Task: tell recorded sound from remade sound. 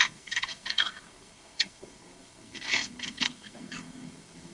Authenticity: remade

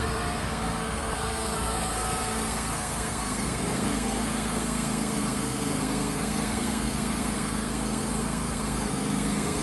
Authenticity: remade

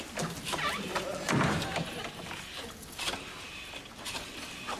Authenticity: recorded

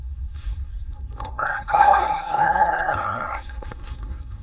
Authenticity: remade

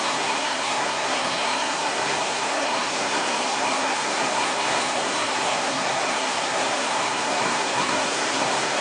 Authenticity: remade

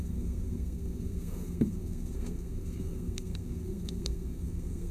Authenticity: remade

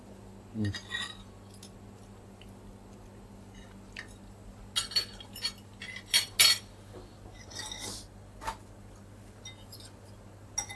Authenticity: recorded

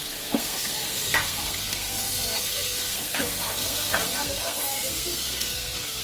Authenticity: remade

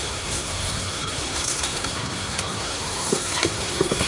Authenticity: remade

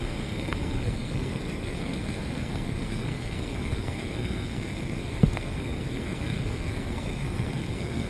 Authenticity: remade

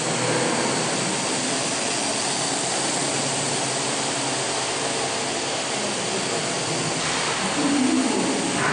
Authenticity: recorded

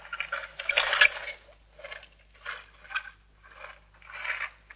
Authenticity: recorded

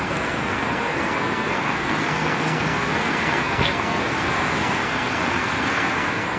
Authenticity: remade